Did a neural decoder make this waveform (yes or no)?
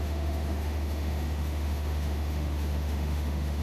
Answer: yes